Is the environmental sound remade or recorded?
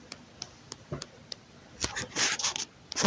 recorded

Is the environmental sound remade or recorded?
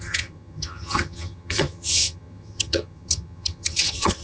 remade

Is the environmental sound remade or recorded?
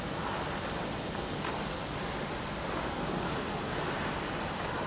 recorded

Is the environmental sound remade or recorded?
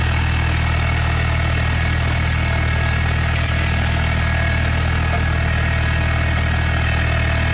recorded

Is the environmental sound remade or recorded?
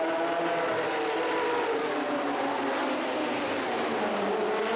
recorded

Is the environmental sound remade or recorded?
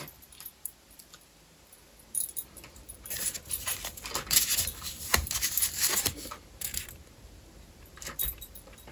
remade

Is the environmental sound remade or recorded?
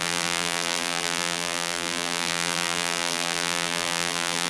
remade